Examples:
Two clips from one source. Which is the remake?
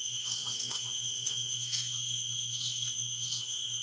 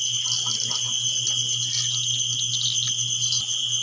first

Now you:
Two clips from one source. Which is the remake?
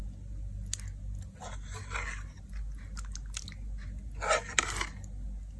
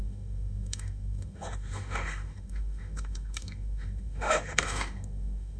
second